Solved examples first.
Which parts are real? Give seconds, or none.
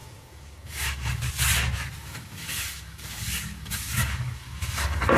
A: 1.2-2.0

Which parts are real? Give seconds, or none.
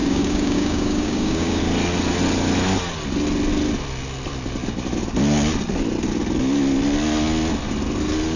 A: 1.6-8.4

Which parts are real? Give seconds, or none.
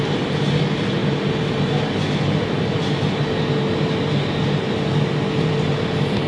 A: 0.0-6.3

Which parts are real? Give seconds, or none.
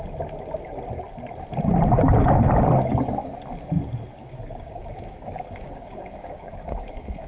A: 0.0-4.2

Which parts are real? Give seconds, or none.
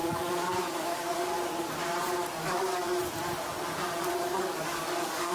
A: 1.3-2.4; 3.0-4.1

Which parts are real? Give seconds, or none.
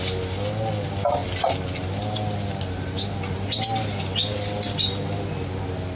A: 0.0-6.0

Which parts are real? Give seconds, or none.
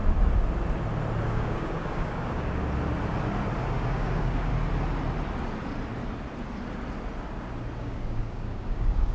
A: 0.0-1.2; 2.6-3.6; 4.5-7.8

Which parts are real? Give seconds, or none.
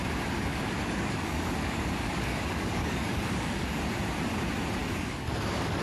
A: 0.0-0.5; 3.8-4.8